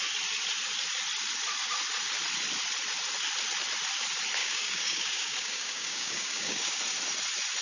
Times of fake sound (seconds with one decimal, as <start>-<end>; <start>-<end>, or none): 4.4-6.8